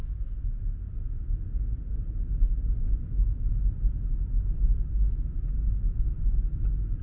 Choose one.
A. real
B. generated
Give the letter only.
A